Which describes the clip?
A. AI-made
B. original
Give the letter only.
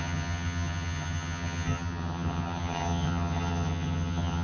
A